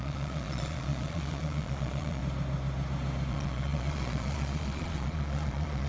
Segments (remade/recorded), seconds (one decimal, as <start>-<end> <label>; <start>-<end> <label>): 0.0-2.2 remade; 2.2-3.3 recorded; 3.3-5.9 remade